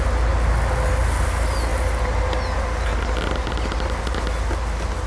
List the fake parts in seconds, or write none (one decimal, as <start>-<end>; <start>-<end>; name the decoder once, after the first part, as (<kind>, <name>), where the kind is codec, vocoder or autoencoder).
none